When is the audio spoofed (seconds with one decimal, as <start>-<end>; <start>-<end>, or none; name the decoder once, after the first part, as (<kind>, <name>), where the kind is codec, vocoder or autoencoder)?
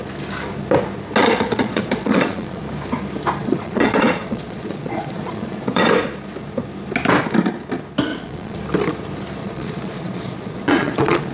1.2-2.6 (vocoder, Vocos); 3.4-5.8; 8.1-8.6; 9.4-11.3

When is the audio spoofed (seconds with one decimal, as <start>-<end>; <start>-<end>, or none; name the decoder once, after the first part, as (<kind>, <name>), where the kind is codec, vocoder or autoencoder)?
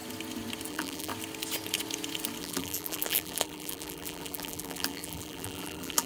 0.7-1.1 (vocoder, BigVGAN v2); 2.4-6.1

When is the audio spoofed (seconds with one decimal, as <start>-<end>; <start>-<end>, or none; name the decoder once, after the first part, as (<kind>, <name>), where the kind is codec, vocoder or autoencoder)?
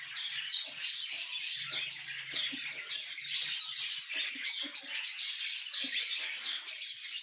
none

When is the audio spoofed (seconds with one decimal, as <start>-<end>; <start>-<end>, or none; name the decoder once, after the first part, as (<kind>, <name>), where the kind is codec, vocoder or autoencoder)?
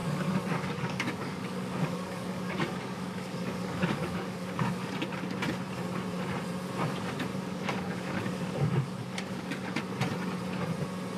0.0-4.9 (codec, DAC); 7.3-9.8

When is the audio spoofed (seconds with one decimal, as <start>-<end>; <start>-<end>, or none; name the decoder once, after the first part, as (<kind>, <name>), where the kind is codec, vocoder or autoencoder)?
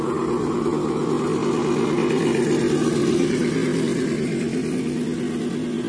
none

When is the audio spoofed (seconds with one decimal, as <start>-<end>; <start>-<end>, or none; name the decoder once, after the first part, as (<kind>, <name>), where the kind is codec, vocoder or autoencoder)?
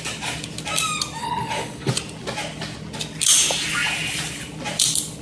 1.2-1.9 (codec, HILCodec)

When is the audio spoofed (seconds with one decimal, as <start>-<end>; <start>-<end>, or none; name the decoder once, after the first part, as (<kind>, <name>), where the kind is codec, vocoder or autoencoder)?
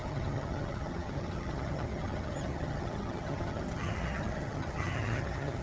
0.0-5.6 (vocoder, HiFi-GAN)